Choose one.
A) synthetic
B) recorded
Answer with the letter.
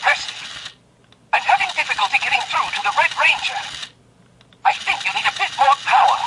B